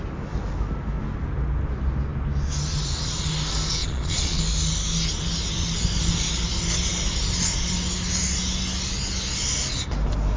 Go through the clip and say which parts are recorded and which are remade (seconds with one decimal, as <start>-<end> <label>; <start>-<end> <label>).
0.0-3.8 recorded; 3.8-4.4 remade; 4.4-10.4 recorded

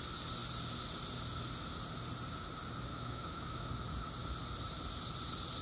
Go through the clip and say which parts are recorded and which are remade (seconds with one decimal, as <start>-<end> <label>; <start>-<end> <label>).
0.0-2.9 recorded; 2.9-3.7 remade; 3.7-5.6 recorded

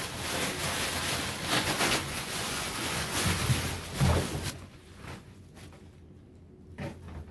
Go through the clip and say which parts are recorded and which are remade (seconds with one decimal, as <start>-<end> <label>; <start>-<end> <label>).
0.0-1.4 recorded; 1.4-3.4 remade; 3.4-4.3 recorded; 4.3-5.5 remade; 5.5-7.3 recorded

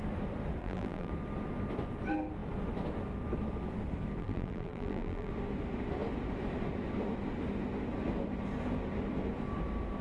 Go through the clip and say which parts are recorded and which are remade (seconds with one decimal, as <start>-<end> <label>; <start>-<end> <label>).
0.0-0.6 recorded; 0.6-1.1 remade; 1.1-4.2 recorded; 4.2-5.3 remade; 5.3-10.0 recorded

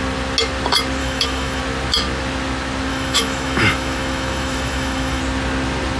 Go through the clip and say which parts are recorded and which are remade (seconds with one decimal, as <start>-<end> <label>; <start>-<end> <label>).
0.0-1.0 recorded; 1.0-1.6 remade; 1.6-2.9 recorded; 2.9-5.2 remade; 5.2-6.0 recorded